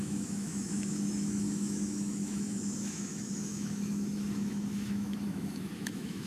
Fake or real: fake